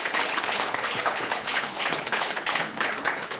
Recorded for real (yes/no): no